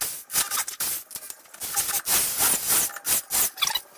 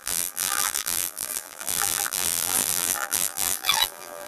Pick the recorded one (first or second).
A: first